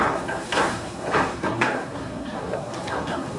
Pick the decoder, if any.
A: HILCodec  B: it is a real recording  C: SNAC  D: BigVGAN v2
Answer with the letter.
C